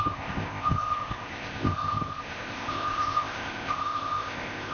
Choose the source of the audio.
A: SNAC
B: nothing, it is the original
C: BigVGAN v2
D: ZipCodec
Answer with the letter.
D